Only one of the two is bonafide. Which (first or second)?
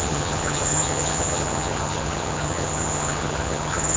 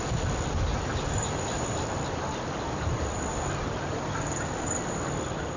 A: second